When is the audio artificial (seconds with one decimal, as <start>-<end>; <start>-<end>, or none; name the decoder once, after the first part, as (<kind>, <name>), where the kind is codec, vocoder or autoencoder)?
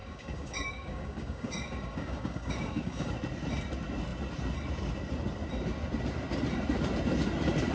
0.0-3.1 (codec, DAC)